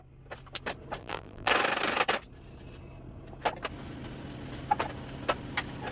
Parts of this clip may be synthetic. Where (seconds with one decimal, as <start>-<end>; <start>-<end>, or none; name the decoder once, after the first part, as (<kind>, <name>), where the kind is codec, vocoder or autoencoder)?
1.0-1.5 (vocoder, BigVGAN v2)